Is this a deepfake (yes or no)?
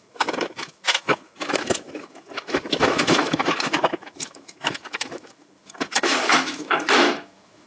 yes